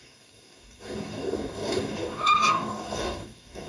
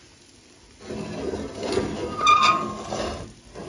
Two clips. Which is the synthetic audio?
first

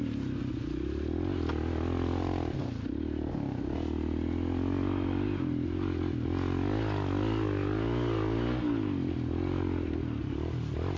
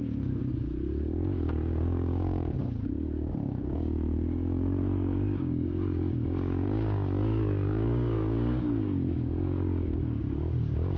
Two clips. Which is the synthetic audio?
second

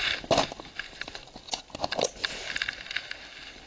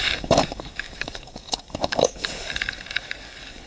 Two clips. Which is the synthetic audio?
second